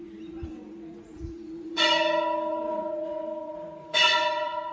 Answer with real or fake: fake